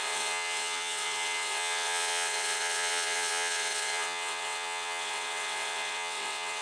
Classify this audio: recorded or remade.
remade